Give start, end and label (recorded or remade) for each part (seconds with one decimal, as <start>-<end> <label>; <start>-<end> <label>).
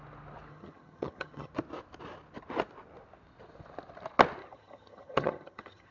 0.0-0.5 recorded; 0.5-1.5 remade; 1.5-4.4 recorded; 4.4-5.9 remade